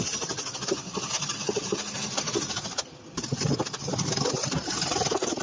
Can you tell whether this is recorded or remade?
recorded